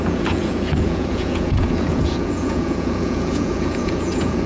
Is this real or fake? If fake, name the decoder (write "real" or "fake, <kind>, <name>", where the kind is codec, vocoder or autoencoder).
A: fake, vocoder, Vocos